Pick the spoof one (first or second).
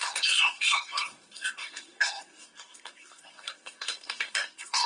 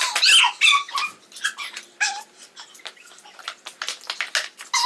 first